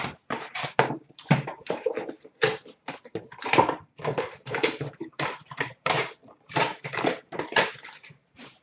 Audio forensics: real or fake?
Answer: fake